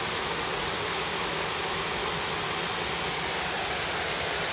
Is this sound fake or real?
real